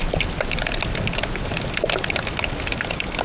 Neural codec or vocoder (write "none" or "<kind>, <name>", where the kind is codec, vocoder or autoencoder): none